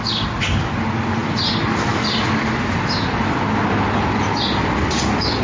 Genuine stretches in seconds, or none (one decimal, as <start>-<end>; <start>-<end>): 0.0-5.4